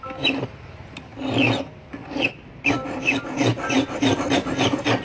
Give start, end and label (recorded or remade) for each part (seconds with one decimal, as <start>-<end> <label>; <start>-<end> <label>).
0.0-3.5 recorded; 3.5-4.3 remade; 4.3-5.0 recorded